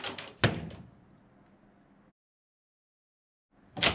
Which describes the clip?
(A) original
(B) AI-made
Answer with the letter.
A